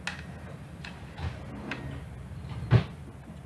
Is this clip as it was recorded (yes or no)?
yes